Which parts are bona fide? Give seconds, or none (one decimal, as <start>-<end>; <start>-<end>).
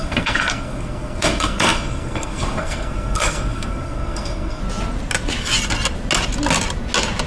4.6-7.3